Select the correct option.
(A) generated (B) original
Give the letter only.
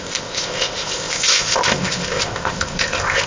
A